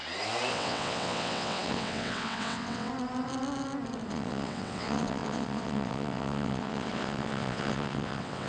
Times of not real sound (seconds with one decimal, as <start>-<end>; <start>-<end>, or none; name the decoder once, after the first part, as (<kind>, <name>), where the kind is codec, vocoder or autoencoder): 0.5-2.9 (vocoder, WaveNeXt); 4.1-8.5